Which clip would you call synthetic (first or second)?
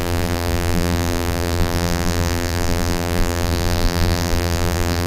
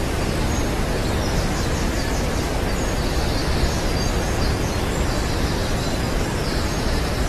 first